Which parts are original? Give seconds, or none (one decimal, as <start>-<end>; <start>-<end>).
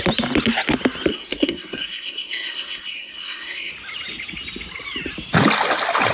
0.0-1.1; 3.7-6.1